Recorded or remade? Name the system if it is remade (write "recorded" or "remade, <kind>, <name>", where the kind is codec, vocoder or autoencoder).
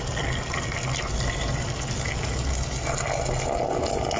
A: recorded